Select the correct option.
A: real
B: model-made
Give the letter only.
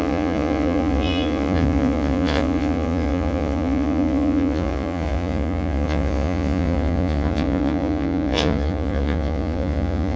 B